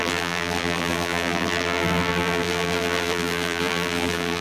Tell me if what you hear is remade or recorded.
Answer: remade